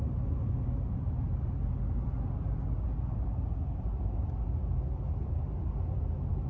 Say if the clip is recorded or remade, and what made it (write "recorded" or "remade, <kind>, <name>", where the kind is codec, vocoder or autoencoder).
recorded